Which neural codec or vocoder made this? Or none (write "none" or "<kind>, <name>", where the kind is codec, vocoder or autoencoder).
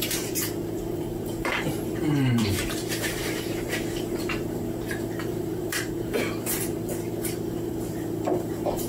vocoder, BigVGAN v2